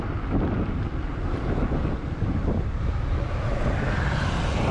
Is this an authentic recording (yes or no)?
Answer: yes